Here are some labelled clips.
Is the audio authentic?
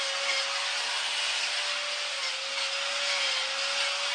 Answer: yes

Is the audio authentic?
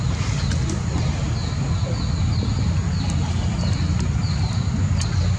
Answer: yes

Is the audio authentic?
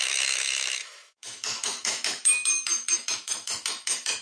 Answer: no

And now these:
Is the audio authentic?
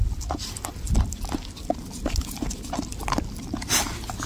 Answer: yes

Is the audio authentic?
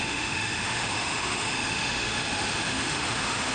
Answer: no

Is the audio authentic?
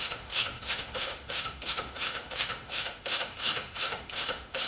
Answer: no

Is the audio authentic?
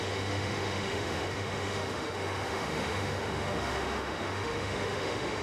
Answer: no